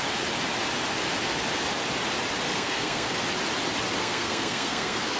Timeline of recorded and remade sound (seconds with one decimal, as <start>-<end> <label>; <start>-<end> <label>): 0.0-2.5 recorded; 2.5-3.2 remade; 3.2-4.0 recorded; 4.0-5.2 remade